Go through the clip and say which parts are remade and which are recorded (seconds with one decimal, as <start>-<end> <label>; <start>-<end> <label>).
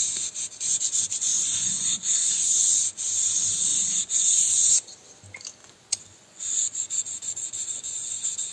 0.0-1.3 recorded; 1.3-2.4 remade; 2.4-3.7 recorded; 3.7-4.7 remade; 4.7-5.6 recorded; 5.6-8.1 remade; 8.1-8.5 recorded